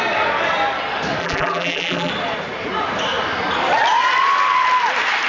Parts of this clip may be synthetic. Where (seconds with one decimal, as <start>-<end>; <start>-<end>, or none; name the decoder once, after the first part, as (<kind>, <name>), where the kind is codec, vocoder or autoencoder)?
1.2-2.1 (vocoder, BigVGAN v2)